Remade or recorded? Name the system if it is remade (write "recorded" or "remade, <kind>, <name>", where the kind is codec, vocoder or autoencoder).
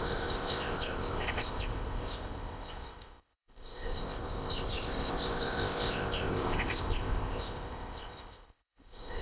remade, codec, ZipCodec